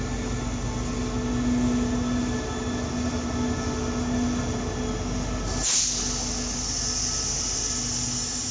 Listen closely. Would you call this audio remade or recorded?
recorded